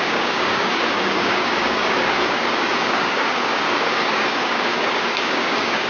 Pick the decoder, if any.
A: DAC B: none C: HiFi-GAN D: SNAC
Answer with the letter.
A